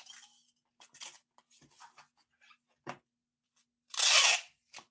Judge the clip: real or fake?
real